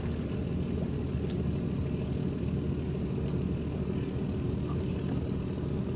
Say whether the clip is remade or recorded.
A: recorded